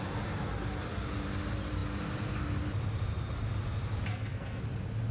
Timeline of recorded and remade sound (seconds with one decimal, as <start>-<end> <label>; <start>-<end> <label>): 0.0-4.1 recorded; 4.1-4.6 remade; 4.6-5.1 recorded